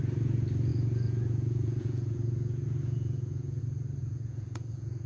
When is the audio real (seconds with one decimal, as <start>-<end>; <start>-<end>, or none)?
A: 0.0-0.7; 3.6-4.0